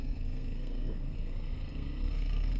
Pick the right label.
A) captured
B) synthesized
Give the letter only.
B